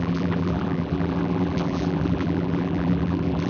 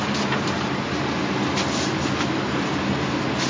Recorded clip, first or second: second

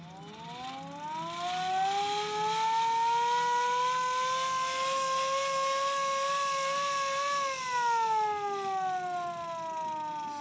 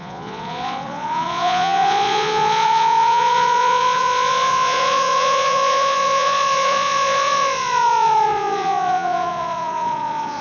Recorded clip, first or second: first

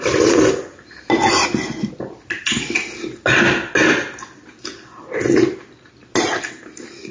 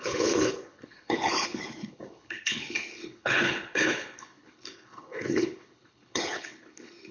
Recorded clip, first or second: first